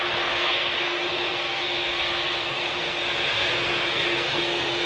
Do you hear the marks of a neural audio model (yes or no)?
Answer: yes